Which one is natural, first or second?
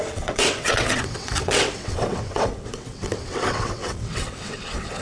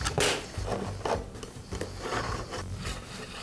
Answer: second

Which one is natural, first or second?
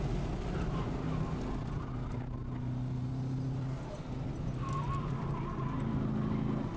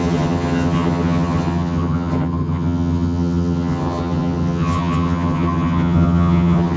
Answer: first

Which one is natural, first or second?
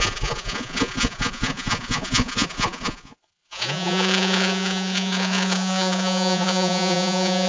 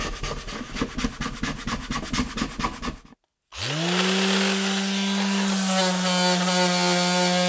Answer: second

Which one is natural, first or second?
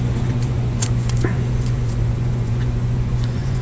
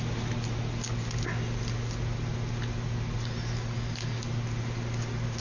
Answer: second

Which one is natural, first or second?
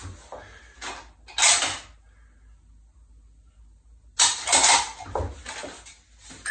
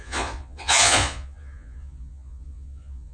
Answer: first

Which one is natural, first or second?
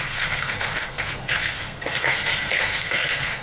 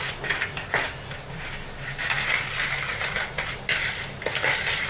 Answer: second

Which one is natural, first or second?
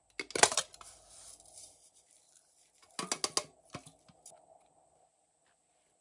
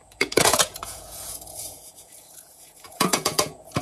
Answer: first